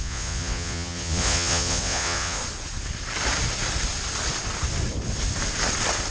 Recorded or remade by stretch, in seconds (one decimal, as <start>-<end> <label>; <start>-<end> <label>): 0.0-2.4 remade; 2.4-6.1 recorded